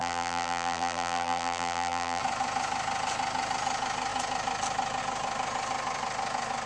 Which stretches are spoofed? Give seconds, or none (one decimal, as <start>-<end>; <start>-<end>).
0.0-2.2

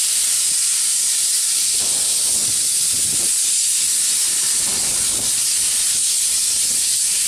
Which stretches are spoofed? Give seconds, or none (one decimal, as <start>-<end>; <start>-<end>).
none

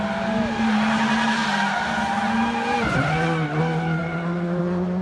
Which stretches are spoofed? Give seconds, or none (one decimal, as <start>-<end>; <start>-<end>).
4.0-4.6

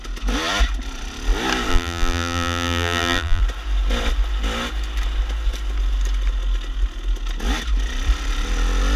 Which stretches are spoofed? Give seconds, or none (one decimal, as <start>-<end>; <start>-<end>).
1.7-3.4

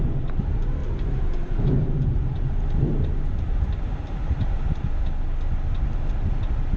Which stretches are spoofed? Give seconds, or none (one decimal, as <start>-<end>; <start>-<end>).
0.8-4.9

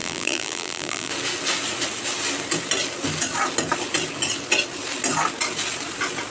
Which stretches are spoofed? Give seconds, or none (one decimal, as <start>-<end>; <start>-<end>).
0.0-1.1